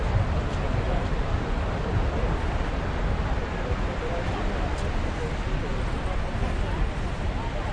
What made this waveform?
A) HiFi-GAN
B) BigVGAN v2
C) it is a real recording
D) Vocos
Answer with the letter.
C